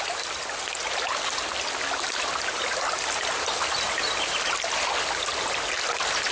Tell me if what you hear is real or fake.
real